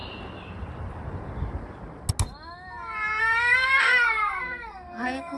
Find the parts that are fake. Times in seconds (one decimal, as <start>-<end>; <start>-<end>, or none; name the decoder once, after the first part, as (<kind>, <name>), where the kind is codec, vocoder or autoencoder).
3.2-5.4 (codec, SNAC)